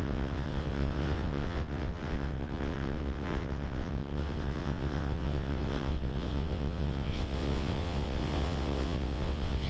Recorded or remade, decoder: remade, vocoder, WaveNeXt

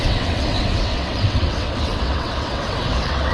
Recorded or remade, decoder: remade, vocoder, WaveNeXt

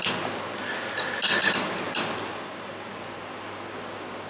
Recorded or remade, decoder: recorded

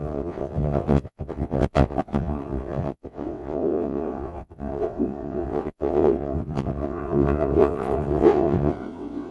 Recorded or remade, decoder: remade, vocoder, WaveNeXt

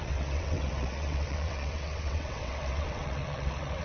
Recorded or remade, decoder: remade, vocoder, WaveNeXt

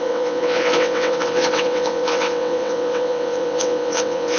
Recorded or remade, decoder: remade, vocoder, WaveNeXt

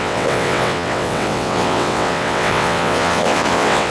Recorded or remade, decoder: remade, vocoder, WaveNeXt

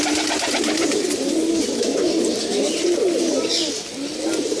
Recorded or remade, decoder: recorded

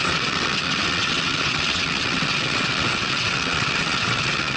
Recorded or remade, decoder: remade, vocoder, WaveNeXt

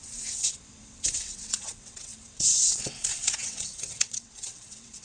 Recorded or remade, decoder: remade, vocoder, WaveNeXt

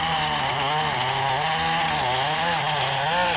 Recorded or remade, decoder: recorded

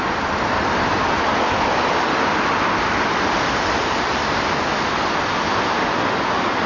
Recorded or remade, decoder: recorded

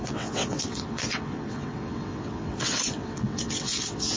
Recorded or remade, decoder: remade, vocoder, WaveNeXt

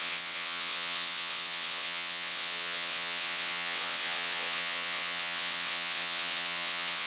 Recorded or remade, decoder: remade, vocoder, WaveNeXt